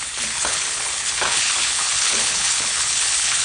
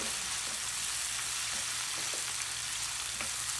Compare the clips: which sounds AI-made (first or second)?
first